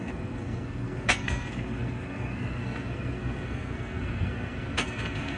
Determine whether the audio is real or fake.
fake